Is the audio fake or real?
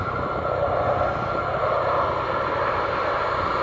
real